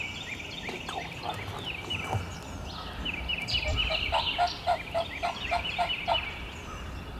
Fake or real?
fake